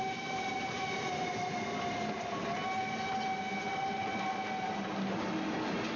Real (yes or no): yes